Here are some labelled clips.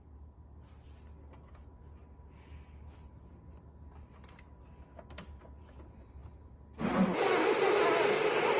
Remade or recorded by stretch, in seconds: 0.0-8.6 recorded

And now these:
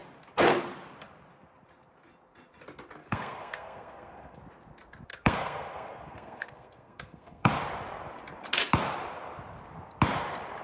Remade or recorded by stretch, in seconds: 0.0-3.0 recorded; 3.0-4.4 remade; 4.4-5.1 recorded; 5.1-7.5 remade; 7.5-10.6 recorded